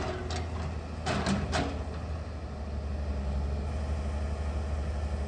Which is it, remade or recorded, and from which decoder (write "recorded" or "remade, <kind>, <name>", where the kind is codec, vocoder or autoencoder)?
recorded